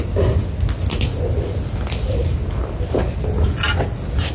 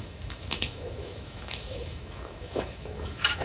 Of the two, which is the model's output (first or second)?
second